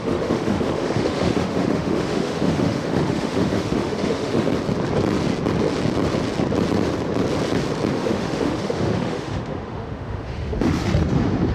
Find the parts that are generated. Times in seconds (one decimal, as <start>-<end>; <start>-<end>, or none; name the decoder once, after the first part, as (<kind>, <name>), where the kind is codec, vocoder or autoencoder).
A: 0.0-4.5 (autoencoder, DAC-VAE); 7.9-10.8